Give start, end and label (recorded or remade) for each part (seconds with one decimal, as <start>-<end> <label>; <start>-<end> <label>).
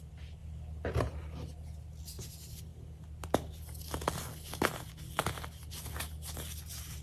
0.0-7.0 recorded